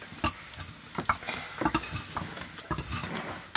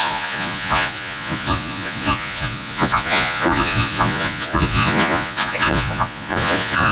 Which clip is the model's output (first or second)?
second